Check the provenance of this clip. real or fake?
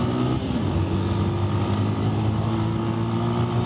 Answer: real